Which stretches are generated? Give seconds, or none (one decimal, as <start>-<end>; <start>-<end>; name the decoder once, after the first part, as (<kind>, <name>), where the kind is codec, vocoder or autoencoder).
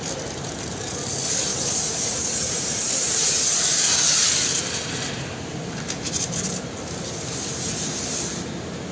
1.5-6.5 (vocoder, BigVGAN v2)